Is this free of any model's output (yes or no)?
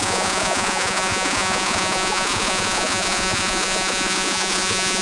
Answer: no